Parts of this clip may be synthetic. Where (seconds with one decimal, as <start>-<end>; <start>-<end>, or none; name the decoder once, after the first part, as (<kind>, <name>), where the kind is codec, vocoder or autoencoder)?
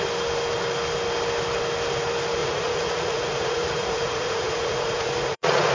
2.4-5.7 (vocoder, Vocos)